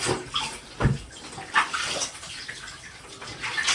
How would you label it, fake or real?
real